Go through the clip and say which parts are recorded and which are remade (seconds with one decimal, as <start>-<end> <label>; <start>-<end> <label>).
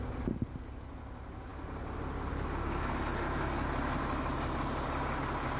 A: 0.0-5.6 recorded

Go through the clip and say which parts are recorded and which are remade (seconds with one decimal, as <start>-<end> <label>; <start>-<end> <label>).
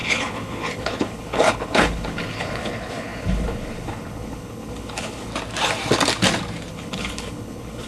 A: 0.0-5.3 remade; 5.3-6.7 recorded; 6.7-7.9 remade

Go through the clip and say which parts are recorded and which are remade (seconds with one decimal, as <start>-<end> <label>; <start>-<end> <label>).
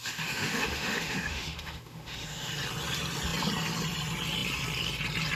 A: 0.0-2.5 remade; 2.5-5.4 recorded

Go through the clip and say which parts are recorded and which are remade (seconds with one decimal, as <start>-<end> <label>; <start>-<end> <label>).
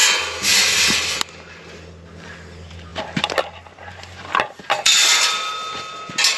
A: 0.0-6.4 recorded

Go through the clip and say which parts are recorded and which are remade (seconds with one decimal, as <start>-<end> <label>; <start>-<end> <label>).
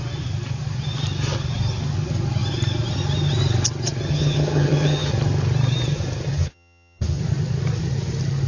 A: 0.0-4.1 recorded; 4.1-5.1 remade; 5.1-6.3 recorded; 6.3-7.2 remade; 7.2-8.5 recorded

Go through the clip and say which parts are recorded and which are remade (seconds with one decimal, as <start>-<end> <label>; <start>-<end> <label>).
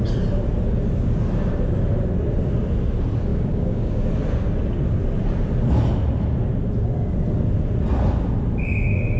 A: 0.0-3.3 recorded; 3.3-4.1 remade; 4.1-9.2 recorded